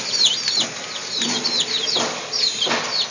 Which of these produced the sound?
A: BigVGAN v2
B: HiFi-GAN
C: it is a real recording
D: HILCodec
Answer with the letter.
C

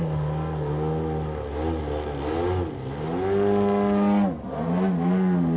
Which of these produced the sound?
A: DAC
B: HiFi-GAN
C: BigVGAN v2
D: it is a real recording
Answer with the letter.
D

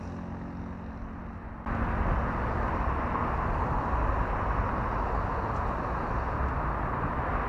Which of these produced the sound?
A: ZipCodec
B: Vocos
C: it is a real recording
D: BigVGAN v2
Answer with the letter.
C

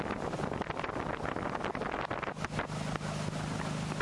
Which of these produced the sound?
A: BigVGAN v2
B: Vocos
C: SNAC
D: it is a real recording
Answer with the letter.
D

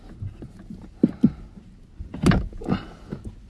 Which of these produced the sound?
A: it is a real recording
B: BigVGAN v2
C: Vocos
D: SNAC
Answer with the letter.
A